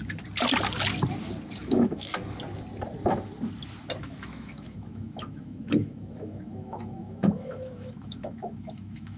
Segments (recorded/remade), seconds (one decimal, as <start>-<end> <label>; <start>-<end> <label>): 0.0-1.6 recorded; 1.6-2.1 remade; 2.1-4.0 recorded; 4.0-9.2 remade